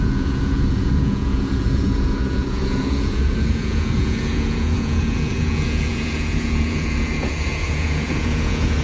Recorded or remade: remade